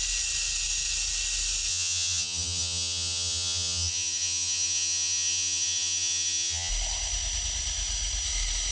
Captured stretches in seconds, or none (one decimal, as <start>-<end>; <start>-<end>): 0.0-1.7; 6.7-8.7